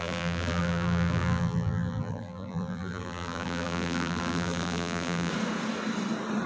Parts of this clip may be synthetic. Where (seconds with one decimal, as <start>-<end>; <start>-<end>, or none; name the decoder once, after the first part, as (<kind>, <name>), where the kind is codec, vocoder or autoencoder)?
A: 0.0-5.3 (vocoder, BigVGAN v2)